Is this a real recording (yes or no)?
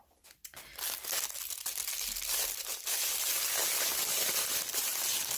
yes